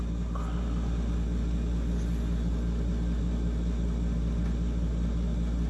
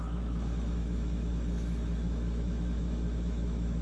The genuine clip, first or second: first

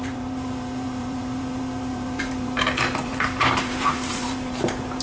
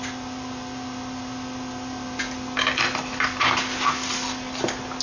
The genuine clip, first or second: second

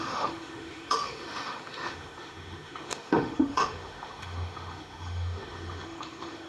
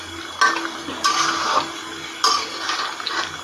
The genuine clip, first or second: second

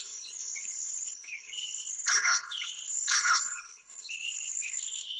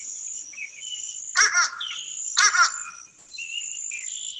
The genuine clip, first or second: second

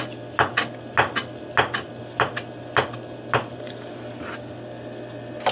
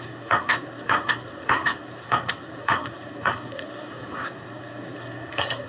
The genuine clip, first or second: first